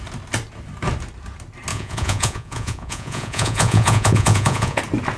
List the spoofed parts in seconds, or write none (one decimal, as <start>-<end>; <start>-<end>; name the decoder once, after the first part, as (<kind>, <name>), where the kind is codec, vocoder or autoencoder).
1.7-4.8 (vocoder, Vocos)